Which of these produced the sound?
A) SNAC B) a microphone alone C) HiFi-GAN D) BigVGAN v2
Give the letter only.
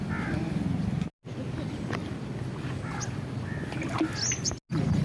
B